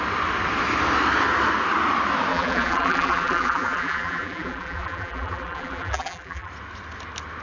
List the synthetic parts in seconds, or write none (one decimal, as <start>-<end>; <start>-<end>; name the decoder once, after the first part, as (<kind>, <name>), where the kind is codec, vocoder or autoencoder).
2.3-6.5 (vocoder, BigVGAN v2)

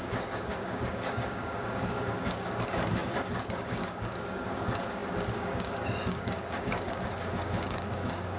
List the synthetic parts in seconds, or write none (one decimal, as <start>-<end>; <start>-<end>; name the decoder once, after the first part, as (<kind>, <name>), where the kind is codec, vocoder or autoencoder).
0.0-8.4 (codec, DAC)

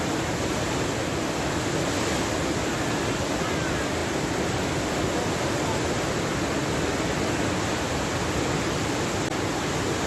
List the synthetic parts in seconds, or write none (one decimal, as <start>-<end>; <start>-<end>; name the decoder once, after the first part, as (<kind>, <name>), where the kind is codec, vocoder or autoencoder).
none

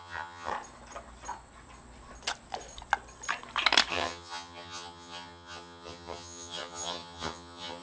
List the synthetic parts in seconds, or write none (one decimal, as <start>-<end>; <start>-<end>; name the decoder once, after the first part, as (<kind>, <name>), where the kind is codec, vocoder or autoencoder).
0.0-0.5 (vocoder, HiFi-GAN); 3.9-7.8

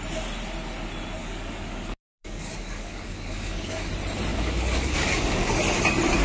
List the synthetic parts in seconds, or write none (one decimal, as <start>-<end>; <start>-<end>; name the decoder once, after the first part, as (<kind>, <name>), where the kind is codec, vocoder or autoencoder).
1.2-3.9 (codec, DAC); 4.3-5.5